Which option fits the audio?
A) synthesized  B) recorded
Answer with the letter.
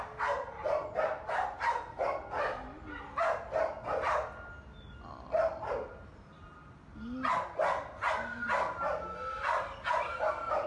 B